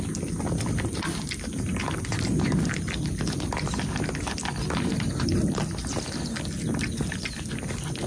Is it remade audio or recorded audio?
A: recorded